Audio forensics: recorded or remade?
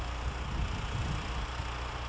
recorded